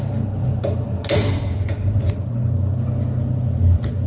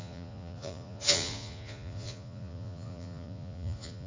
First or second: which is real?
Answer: first